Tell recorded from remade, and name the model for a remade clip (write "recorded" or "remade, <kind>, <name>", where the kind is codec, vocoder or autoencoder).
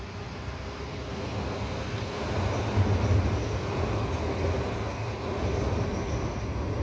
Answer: recorded